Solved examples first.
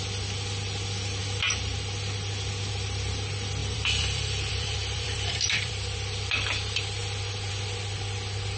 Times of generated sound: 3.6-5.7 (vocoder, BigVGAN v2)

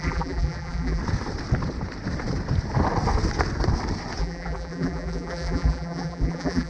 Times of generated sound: 0.0-1.0 (vocoder, BigVGAN v2); 4.2-6.7